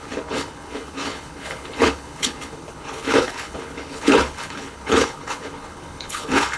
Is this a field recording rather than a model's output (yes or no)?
no